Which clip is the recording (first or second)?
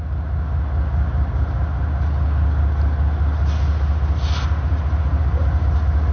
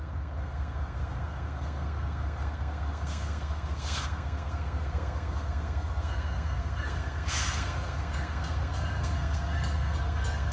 first